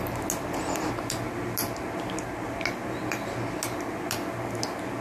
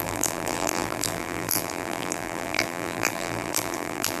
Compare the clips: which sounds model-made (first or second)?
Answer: second